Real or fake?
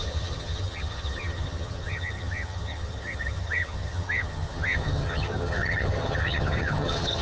fake